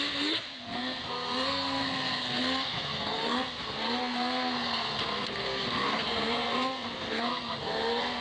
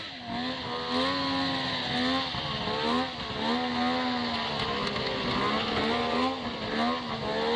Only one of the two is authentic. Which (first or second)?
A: second